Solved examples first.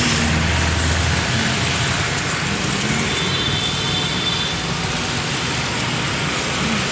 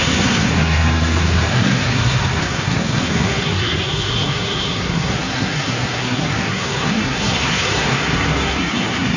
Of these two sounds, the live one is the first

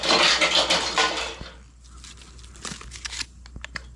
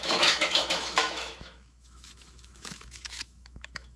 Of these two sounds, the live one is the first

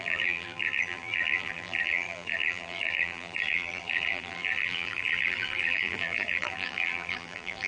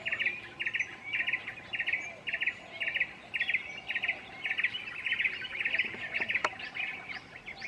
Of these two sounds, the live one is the second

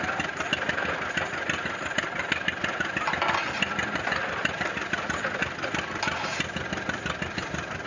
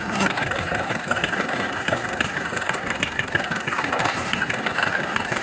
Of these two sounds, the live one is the first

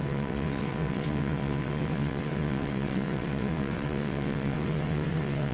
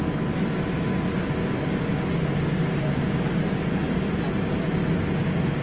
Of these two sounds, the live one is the second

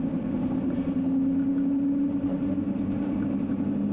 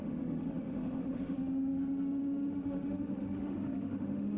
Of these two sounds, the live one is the first